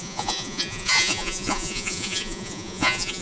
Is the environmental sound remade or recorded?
remade